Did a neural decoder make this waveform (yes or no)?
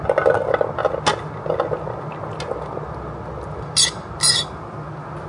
no